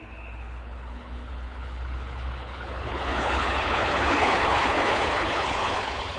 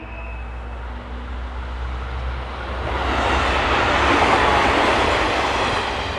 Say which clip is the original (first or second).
second